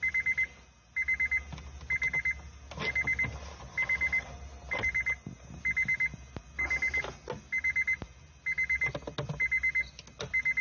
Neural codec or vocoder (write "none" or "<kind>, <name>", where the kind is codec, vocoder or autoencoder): none